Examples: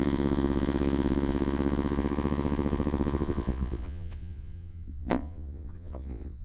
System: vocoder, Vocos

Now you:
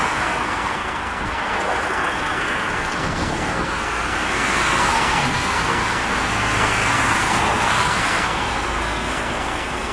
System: codec, SNAC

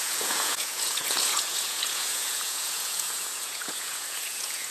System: vocoder, Vocos